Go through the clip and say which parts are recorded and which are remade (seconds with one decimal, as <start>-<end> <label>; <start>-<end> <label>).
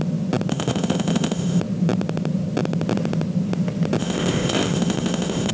0.0-0.5 recorded; 0.5-1.6 remade; 1.6-4.0 recorded; 4.0-5.5 remade